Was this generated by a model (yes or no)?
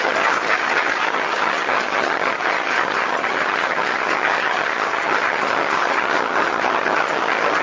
yes